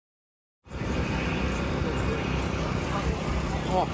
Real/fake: real